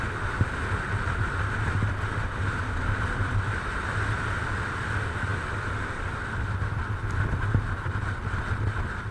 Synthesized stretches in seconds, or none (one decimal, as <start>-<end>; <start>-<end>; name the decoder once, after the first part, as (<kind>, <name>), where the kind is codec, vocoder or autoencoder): none